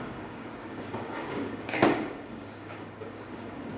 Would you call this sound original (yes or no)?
no